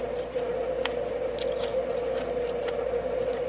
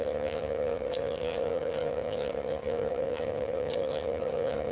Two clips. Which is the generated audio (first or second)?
second